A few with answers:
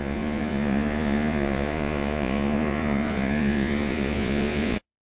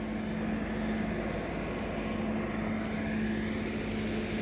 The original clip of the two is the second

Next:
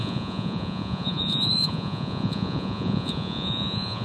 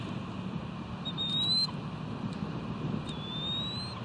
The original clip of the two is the second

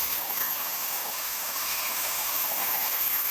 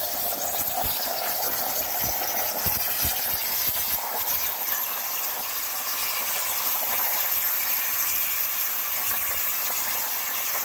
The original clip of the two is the second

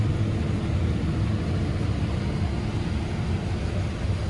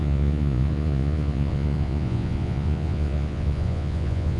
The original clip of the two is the first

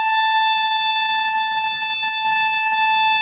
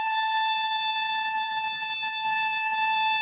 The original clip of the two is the first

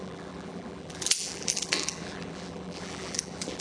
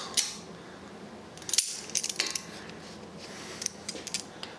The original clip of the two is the second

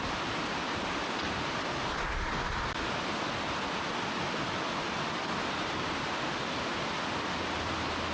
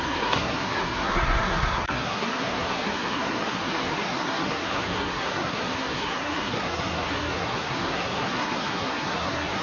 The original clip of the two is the first